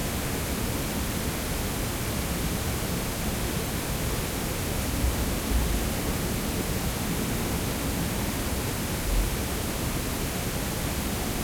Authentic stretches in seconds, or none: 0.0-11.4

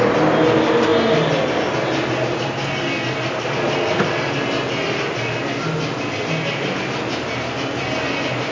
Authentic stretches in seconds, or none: 0.0-8.5

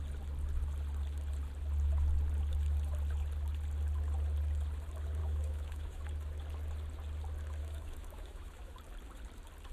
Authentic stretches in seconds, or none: 0.0-5.2; 6.0-7.6; 8.7-9.7